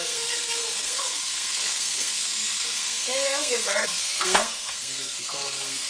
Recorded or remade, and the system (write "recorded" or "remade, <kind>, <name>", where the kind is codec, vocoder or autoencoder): remade, codec, SNAC